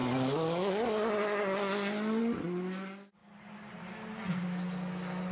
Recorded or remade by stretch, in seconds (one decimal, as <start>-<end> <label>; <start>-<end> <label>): 0.0-5.3 recorded